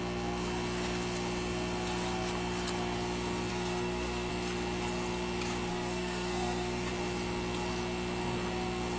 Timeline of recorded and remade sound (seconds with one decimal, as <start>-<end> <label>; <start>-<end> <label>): 0.0-3.5 recorded; 3.5-4.3 remade; 4.3-5.7 recorded; 5.7-6.9 remade; 6.9-9.0 recorded